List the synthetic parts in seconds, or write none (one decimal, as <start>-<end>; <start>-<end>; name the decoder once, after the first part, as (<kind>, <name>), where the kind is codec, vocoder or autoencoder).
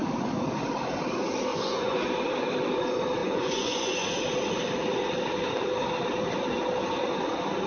1.5-2.0 (vocoder, Vocos); 3.2-4.2